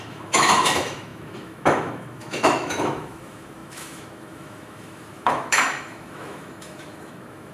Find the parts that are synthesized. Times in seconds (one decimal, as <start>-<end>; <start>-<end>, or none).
0.0-7.5